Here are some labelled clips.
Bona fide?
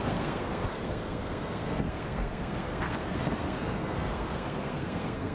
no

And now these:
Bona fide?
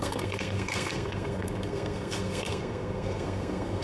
no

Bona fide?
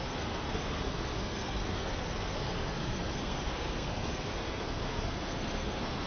no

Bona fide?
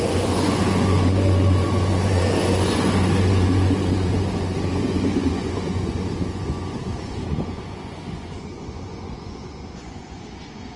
no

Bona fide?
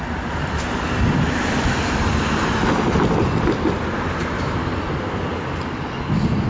yes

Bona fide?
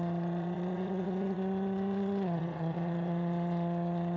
no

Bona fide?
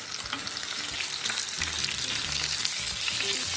yes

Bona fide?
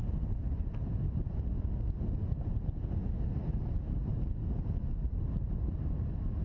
yes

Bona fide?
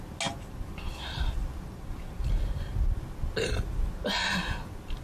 yes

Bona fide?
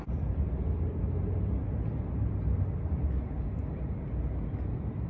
yes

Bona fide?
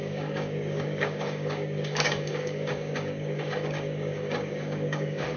no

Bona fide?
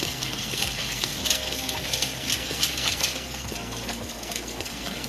no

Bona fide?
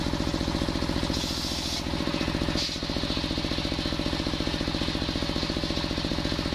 yes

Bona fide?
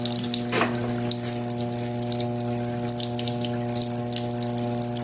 yes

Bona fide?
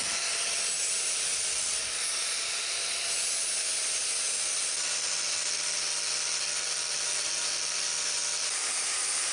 yes